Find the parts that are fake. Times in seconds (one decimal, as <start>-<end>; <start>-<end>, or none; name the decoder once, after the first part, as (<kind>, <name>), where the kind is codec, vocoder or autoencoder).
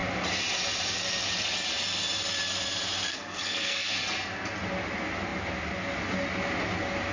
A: 3.1-3.9 (codec, SNAC)